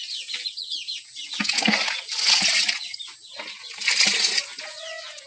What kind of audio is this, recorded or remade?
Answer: recorded